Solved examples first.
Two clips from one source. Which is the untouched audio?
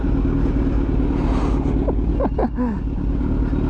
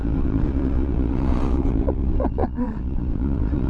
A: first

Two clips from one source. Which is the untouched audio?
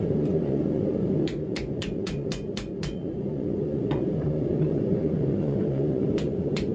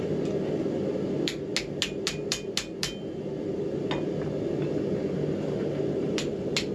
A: second